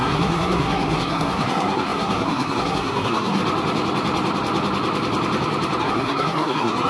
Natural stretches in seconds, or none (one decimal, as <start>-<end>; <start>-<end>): 3.4-5.8